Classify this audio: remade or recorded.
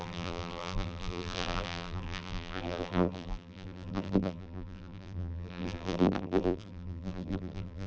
remade